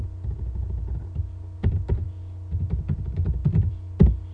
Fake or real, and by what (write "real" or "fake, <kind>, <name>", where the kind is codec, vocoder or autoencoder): real